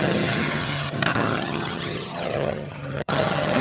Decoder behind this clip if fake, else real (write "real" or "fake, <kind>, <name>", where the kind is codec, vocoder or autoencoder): fake, vocoder, HiFi-GAN